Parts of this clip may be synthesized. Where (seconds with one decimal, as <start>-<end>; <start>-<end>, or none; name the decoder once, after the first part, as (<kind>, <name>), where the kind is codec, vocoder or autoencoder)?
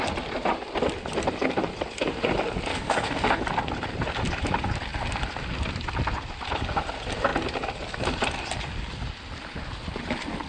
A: 2.7-3.4 (codec, DAC)